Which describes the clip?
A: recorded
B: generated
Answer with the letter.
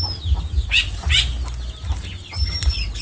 A